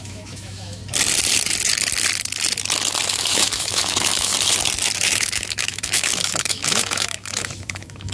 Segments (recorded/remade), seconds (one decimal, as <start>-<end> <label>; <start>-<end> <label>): 0.0-0.8 remade; 0.8-3.1 recorded; 3.1-4.3 remade; 4.3-5.0 recorded; 5.0-8.1 remade

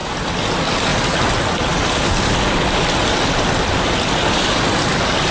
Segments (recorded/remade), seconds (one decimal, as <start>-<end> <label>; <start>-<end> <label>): 0.0-5.3 recorded

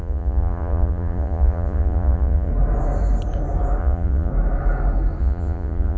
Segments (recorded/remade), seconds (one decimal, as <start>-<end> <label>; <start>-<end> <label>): 0.0-2.5 remade; 2.5-3.8 recorded; 3.8-4.3 remade; 4.3-5.2 recorded; 5.2-6.0 remade

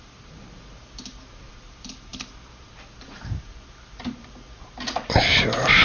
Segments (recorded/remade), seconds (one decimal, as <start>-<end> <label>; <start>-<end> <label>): 0.0-5.8 remade

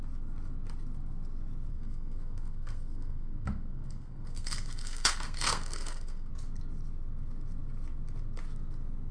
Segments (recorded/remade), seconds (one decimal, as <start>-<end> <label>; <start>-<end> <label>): 0.0-1.7 recorded; 1.7-6.3 remade; 6.3-9.1 recorded

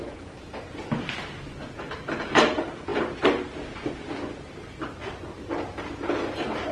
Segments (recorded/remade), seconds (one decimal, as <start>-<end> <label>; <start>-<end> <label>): 0.0-6.7 recorded